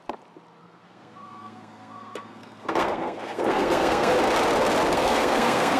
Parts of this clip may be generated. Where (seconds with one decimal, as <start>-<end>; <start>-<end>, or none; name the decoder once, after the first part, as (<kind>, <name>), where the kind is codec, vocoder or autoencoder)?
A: 0.6-4.1 (codec, SNAC); 4.9-5.8